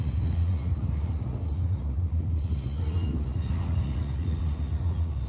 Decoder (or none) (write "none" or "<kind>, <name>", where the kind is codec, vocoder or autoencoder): vocoder, Vocos